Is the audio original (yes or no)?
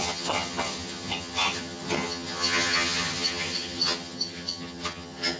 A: no